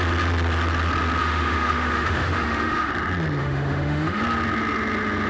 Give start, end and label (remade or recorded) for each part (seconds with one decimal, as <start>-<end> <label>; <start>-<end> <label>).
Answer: 0.0-1.2 recorded; 1.2-2.9 remade; 2.9-3.4 recorded; 3.4-4.2 remade; 4.2-5.3 recorded